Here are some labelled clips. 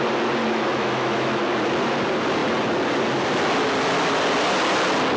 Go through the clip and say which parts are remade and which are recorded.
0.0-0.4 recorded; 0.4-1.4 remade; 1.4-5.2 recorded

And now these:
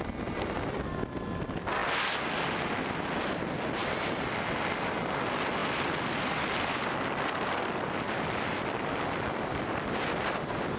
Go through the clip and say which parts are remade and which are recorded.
0.0-3.8 recorded; 3.8-5.0 remade; 5.0-5.6 recorded; 5.6-10.4 remade; 10.4-10.8 recorded